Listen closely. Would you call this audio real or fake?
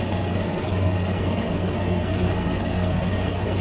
fake